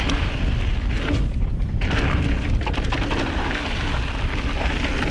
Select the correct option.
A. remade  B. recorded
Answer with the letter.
B